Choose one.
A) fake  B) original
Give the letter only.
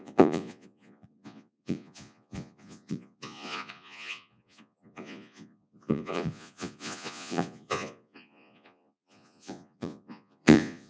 A